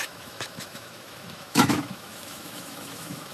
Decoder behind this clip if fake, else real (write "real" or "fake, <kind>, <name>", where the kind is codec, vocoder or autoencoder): fake, autoencoder, DAC-VAE